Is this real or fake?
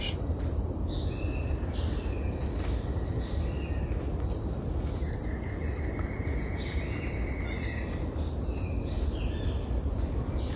real